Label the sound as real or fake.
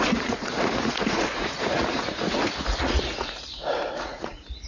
fake